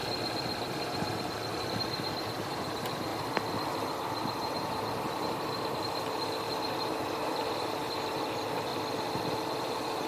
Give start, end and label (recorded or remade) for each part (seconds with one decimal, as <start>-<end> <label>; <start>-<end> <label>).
0.0-1.8 recorded; 1.8-3.1 remade; 3.1-4.3 recorded; 4.3-8.7 remade; 8.7-9.6 recorded; 9.6-10.1 remade